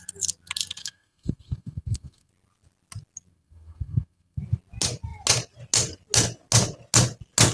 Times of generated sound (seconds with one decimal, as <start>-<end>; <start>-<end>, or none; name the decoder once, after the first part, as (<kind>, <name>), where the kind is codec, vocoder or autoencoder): 0.8-2.3 (codec, SNAC); 3.3-4.4